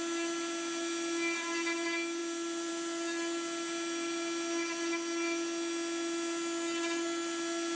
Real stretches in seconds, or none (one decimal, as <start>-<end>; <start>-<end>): 0.0-7.8